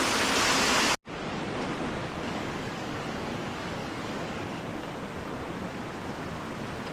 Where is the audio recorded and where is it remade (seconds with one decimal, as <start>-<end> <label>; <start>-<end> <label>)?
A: 0.0-2.0 recorded; 2.0-4.6 remade; 4.6-6.9 recorded